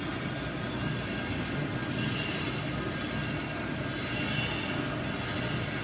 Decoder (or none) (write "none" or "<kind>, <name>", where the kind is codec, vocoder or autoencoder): none